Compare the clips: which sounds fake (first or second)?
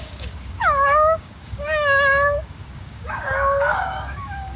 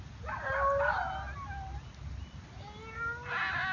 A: first